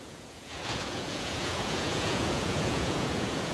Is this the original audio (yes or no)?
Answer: no